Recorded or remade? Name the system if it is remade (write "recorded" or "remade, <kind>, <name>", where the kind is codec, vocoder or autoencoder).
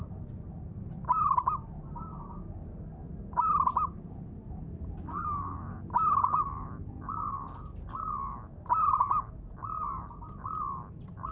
recorded